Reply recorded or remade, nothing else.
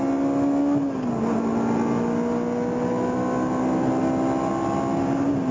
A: recorded